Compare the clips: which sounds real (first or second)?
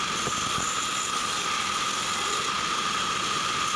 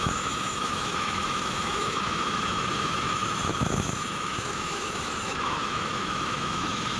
first